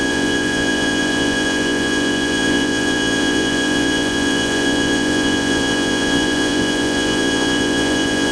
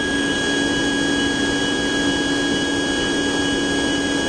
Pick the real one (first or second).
second